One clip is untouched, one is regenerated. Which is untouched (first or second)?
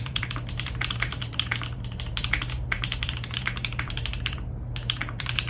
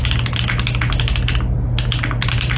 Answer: second